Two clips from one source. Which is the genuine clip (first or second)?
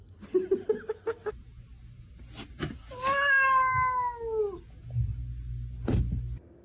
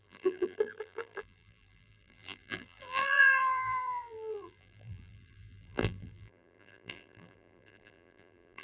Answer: first